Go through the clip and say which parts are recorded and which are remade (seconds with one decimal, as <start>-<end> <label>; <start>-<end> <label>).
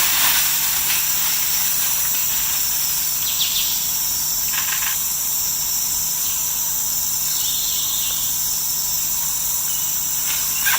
0.0-2.2 recorded; 2.2-3.3 remade; 3.3-10.8 recorded